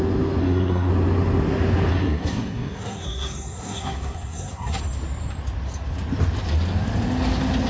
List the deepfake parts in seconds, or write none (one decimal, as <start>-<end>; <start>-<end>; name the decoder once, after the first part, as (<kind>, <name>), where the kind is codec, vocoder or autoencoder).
0.4-0.9 (codec, SNAC); 1.9-4.8